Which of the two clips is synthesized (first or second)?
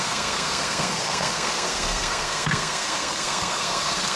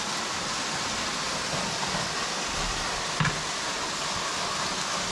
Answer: first